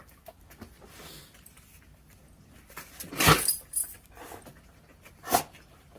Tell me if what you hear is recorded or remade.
recorded